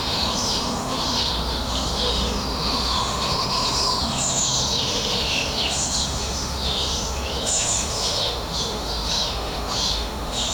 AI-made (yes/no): yes